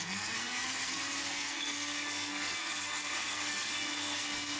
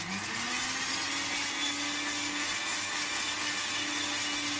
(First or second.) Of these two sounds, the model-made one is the first